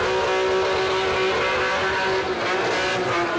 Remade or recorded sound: recorded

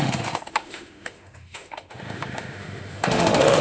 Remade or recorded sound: remade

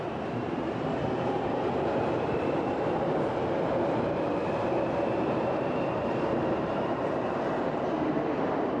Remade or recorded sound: remade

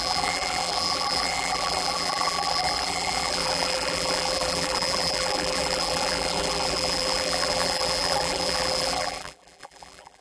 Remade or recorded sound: remade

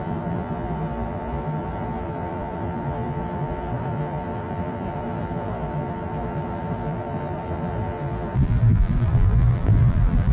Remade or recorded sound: remade